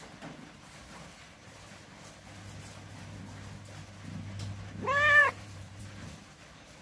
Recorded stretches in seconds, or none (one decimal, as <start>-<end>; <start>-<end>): 0.0-0.8; 1.6-5.2; 5.8-6.8